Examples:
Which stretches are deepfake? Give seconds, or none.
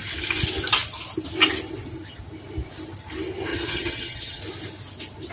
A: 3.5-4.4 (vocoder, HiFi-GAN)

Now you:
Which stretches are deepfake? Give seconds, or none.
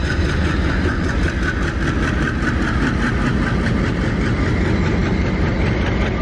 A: 0.0-1.2 (vocoder, Vocos)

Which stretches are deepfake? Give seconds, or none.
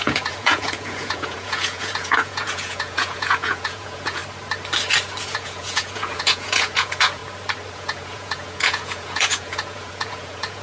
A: 0.0-4.2 (vocoder, Vocos); 5.2-7.2; 7.7-10.6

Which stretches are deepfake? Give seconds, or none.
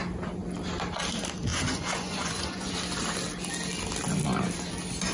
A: 1.5-2.7 (vocoder, Vocos)